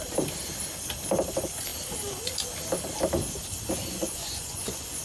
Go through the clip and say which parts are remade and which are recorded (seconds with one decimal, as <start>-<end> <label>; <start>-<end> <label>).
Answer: 0.0-3.8 recorded; 3.8-5.0 remade